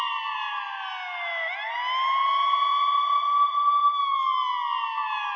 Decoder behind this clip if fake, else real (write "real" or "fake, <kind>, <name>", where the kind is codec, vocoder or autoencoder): real